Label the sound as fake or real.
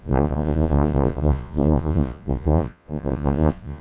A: fake